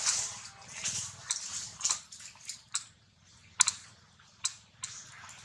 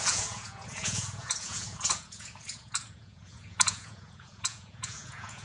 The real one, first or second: first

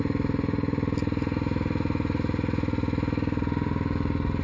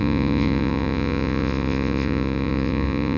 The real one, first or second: first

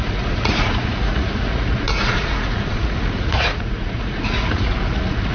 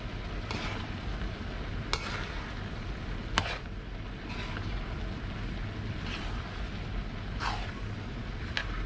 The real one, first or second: second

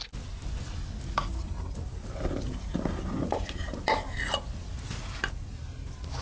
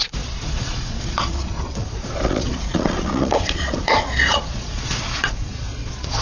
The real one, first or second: first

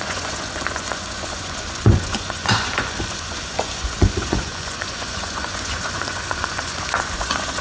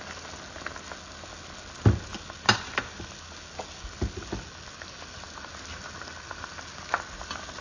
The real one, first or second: second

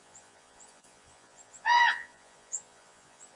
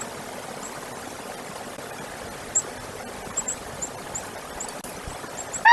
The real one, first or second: second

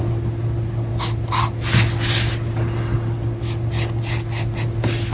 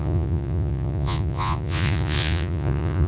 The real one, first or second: first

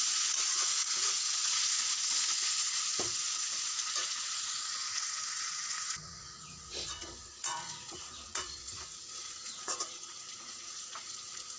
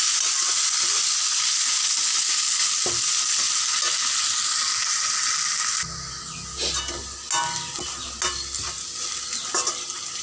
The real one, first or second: second